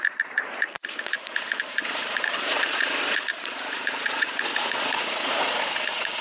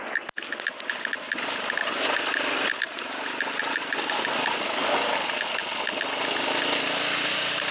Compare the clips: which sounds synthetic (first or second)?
first